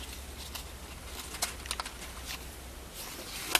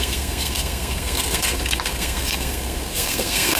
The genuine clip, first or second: first